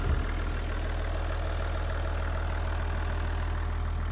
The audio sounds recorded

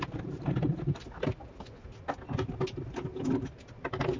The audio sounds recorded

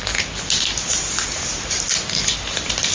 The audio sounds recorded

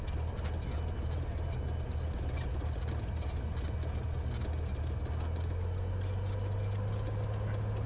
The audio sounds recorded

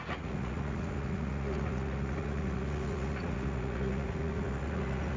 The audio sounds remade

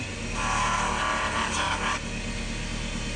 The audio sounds recorded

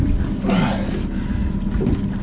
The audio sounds recorded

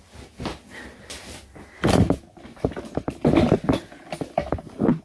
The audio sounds recorded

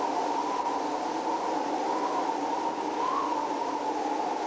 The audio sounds recorded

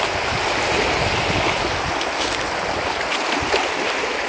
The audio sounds recorded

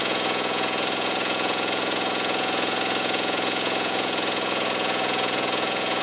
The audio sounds remade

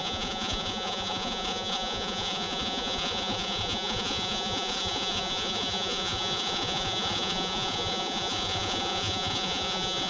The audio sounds remade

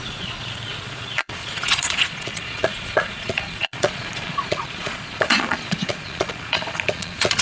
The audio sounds remade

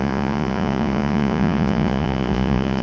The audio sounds remade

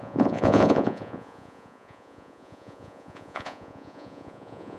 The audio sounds remade